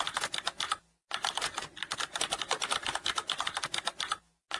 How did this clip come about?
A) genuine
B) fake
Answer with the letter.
A